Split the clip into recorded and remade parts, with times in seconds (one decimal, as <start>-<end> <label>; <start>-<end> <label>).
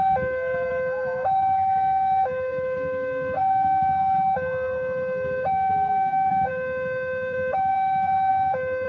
0.0-8.9 recorded